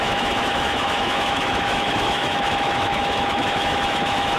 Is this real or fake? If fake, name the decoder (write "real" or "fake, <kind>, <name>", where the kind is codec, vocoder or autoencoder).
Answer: fake, autoencoder, DAC-VAE